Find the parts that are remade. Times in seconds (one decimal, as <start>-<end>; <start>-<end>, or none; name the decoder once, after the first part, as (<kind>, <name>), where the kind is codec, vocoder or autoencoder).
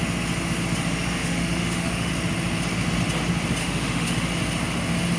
1.2-2.1 (autoencoder, DAC-VAE); 3.6-4.3